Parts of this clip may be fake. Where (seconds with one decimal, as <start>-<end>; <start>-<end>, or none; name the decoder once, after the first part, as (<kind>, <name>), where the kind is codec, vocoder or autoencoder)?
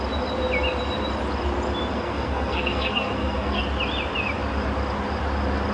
1.9-3.6 (codec, SNAC)